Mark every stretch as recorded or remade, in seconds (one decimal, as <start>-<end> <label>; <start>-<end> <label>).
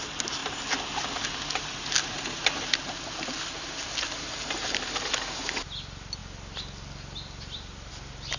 0.0-8.4 recorded